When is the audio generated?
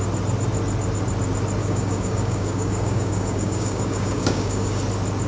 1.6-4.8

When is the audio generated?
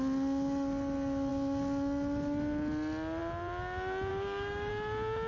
4.1-4.7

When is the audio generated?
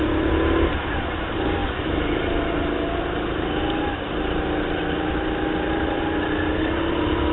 none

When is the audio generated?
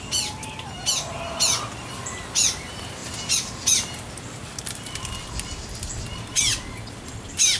none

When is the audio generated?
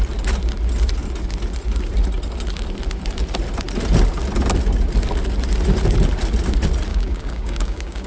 6.9-8.1